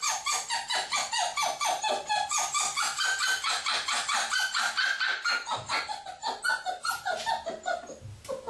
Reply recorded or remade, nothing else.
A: recorded